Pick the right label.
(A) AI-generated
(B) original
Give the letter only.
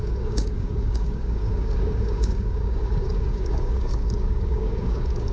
A